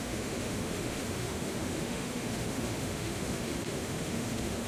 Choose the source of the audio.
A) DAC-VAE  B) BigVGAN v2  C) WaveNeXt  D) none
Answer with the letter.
A